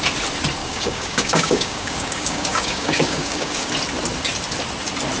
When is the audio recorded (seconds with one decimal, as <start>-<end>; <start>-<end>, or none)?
0.0-0.6; 3.7-5.2